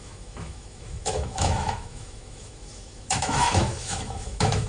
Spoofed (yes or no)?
yes